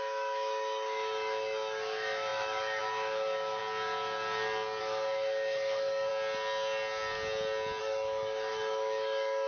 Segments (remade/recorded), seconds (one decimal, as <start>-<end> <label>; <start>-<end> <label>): 0.0-3.6 remade; 3.6-4.8 recorded; 4.8-6.1 remade; 6.1-7.8 recorded; 7.8-9.5 remade